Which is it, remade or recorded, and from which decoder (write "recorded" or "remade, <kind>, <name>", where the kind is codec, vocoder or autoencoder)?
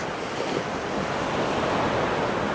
recorded